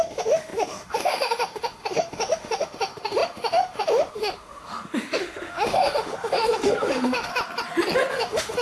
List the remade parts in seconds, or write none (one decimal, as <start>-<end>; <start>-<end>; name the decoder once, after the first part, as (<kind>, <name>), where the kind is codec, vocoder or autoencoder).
0.0-7.3 (autoencoder, DAC-VAE); 8.1-8.6